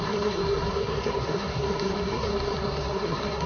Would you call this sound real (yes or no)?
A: no